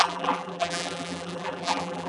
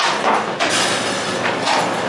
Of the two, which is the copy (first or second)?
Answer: first